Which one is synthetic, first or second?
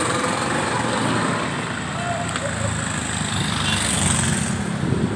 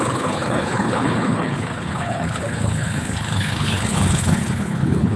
second